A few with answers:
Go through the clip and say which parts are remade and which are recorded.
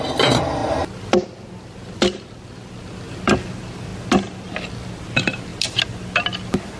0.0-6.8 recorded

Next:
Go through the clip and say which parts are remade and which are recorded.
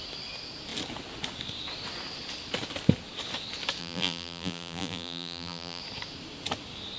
0.0-3.8 recorded; 3.8-5.8 remade; 5.8-7.0 recorded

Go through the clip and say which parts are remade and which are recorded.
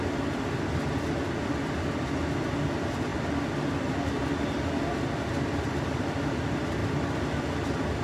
0.0-8.0 recorded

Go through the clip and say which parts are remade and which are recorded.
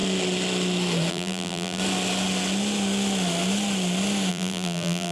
0.0-1.1 recorded; 1.1-1.8 remade; 1.8-4.3 recorded; 4.3-5.1 remade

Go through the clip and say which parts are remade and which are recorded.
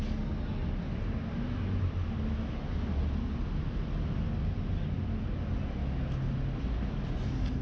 0.0-7.6 recorded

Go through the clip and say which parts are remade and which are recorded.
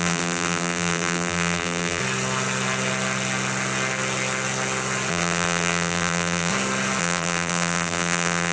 0.0-2.0 remade; 2.0-5.1 recorded; 5.1-6.5 remade; 6.5-7.0 recorded; 7.0-8.5 remade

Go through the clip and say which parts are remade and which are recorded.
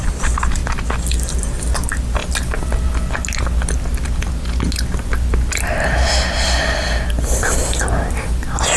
0.0-8.8 recorded